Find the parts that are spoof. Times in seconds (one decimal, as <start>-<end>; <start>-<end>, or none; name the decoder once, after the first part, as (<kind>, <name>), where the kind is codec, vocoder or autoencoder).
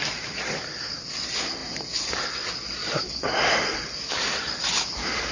0.0-0.6 (vocoder, BigVGAN v2); 1.6-2.2